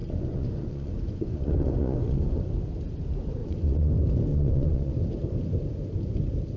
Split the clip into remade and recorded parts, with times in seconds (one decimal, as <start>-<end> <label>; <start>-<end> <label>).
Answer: 0.0-2.5 remade; 2.5-3.4 recorded; 3.4-3.9 remade; 3.9-4.3 recorded; 4.3-4.9 remade; 4.9-6.6 recorded